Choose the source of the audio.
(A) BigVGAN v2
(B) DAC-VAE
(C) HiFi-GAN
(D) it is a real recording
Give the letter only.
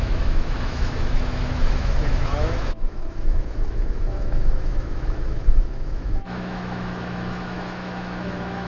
B